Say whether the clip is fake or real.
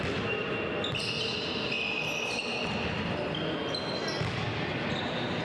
real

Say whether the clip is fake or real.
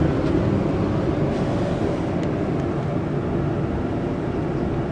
real